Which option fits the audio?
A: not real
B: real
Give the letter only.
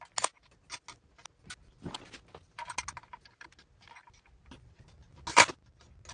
B